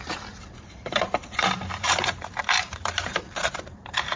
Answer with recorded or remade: remade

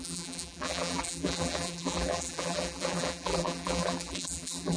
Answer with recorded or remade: remade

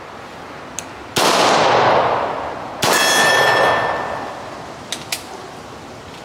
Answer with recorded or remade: recorded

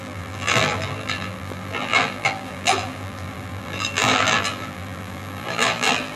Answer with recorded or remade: remade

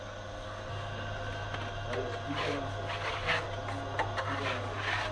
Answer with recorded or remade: recorded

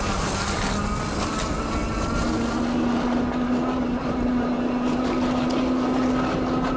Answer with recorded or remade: recorded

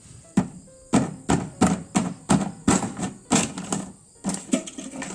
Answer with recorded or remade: recorded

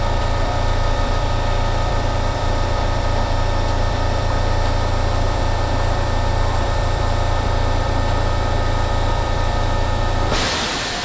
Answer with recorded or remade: remade